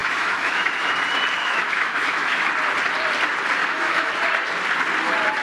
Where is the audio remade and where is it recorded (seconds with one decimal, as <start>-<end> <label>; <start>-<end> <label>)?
0.0-0.9 remade; 0.9-1.4 recorded; 1.4-2.5 remade; 2.5-3.6 recorded; 3.6-4.1 remade; 4.1-5.4 recorded